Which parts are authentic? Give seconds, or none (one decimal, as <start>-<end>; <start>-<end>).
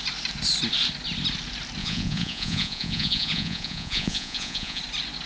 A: 0.0-1.8; 4.8-5.3